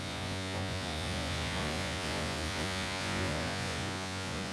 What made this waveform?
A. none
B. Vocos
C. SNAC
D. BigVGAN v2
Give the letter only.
B